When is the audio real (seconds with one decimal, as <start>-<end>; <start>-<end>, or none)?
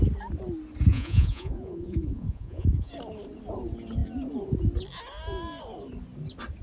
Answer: 0.0-0.9; 2.9-6.6